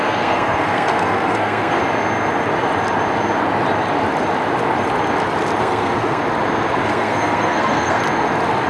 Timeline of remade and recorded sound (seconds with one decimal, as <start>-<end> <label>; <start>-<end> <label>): 0.0-1.8 remade; 1.8-5.6 recorded; 5.6-6.2 remade; 6.2-6.9 recorded; 6.9-8.0 remade; 8.0-8.7 recorded